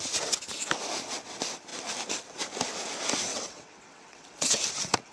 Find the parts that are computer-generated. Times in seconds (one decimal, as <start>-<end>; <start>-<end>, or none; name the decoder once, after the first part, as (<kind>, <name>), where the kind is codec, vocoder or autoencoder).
3.3-4.6 (vocoder, WaveNeXt)